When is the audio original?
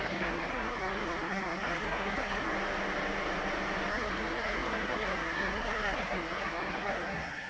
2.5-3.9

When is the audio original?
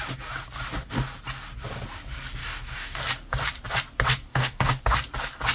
0.0-2.4; 3.0-4.3; 4.8-5.5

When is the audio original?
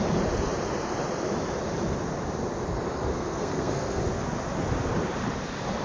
0.0-3.1; 4.0-5.8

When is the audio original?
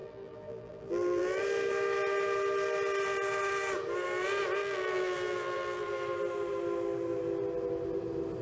1.4-4.6; 5.9-8.4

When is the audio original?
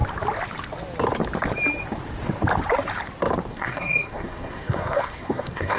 0.0-3.5